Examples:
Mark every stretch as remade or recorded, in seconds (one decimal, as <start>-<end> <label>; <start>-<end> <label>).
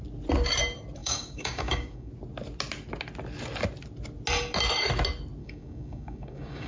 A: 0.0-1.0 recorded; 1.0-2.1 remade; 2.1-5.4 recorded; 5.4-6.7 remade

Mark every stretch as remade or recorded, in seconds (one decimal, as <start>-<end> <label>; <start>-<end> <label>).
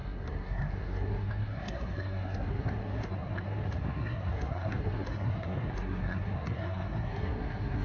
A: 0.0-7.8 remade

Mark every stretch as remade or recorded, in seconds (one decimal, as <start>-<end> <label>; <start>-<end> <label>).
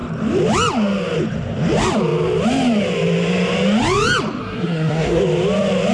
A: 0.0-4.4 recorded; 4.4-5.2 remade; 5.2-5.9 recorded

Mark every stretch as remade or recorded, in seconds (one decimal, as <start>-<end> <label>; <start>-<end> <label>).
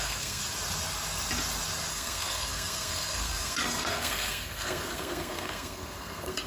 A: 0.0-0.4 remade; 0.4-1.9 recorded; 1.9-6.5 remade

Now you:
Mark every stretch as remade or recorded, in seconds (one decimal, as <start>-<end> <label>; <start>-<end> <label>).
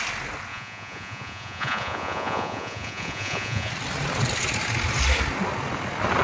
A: 0.0-0.5 recorded; 0.5-3.7 remade; 3.7-6.2 recorded